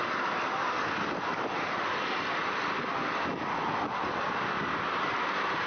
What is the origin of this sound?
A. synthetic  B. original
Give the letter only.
A